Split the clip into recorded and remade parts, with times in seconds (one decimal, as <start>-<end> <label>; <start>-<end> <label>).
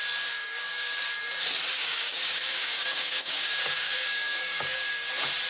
0.0-0.4 recorded; 0.4-1.1 remade; 1.1-1.8 recorded; 1.8-5.1 remade; 5.1-5.5 recorded